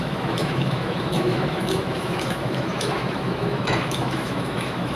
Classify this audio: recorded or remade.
remade